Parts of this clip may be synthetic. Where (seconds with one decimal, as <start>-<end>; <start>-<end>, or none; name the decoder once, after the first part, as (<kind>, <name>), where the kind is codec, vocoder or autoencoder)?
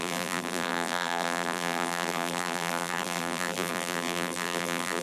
0.0-5.0 (vocoder, BigVGAN v2)